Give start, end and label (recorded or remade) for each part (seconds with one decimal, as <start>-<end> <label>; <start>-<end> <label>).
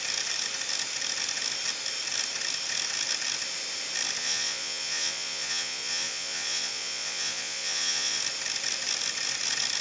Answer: 0.0-4.2 recorded; 4.2-8.2 remade; 8.2-9.8 recorded